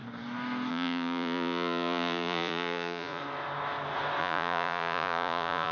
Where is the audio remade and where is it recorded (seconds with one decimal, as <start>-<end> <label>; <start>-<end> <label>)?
0.0-0.7 recorded; 0.7-3.2 remade; 3.2-4.2 recorded; 4.2-5.7 remade